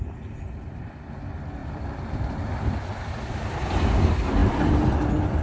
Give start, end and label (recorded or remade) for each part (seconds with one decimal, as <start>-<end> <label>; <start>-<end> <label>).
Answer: 0.0-1.6 recorded; 1.6-3.1 remade; 3.1-5.4 recorded